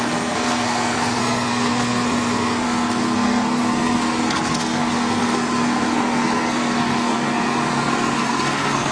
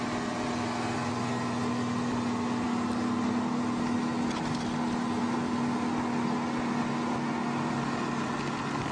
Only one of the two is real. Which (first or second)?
second